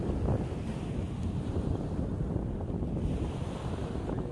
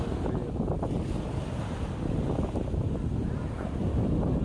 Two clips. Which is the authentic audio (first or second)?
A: second